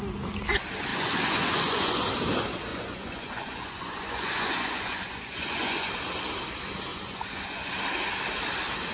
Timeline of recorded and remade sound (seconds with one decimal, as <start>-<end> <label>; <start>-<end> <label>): 0.0-0.9 recorded; 0.9-2.0 remade; 2.0-2.7 recorded; 2.7-5.9 remade; 5.9-6.9 recorded; 6.9-7.7 remade; 7.7-8.9 recorded